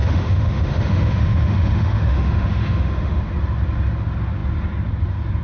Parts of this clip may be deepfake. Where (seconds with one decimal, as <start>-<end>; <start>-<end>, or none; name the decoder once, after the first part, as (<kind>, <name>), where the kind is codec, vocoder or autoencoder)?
0.0-3.2 (autoencoder, DAC-VAE)